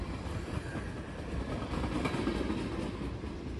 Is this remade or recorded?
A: recorded